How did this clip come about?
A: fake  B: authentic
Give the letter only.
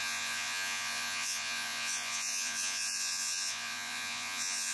A